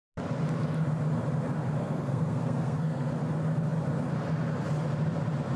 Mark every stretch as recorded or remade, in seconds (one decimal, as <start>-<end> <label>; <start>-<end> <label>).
0.0-1.8 recorded; 1.8-3.1 remade; 3.1-5.6 recorded